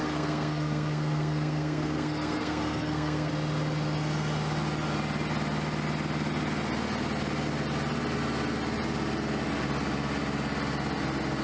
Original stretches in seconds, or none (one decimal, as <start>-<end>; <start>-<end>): 3.3-11.4